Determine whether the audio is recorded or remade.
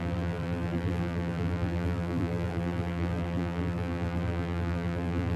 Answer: remade